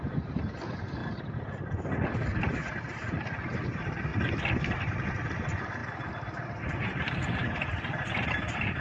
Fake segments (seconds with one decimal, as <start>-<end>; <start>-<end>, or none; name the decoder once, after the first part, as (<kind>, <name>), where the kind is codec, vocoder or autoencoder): 0.0-1.0 (vocoder, BigVGAN v2); 2.4-4.1; 4.6-8.8